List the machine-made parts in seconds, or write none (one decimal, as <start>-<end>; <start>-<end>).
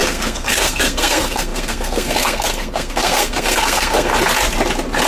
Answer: 0.0-4.1